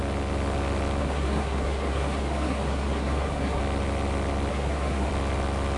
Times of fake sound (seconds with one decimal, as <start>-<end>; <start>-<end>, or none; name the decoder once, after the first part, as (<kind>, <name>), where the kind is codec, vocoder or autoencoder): 1.0-3.6 (codec, SNAC); 4.5-5.1